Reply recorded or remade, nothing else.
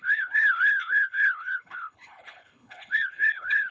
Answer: remade